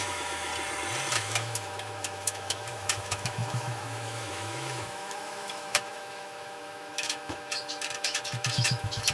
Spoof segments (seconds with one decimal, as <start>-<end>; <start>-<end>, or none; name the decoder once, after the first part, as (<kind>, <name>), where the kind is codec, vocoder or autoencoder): 0.0-0.5 (autoencoder, DAC-VAE); 1.1-9.1